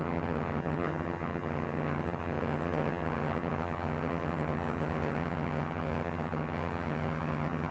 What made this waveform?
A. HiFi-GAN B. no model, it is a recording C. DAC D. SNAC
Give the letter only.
A